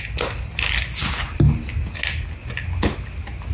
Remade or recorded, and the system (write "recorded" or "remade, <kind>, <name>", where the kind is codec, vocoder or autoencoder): recorded